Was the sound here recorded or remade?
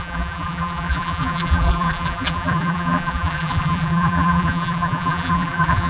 remade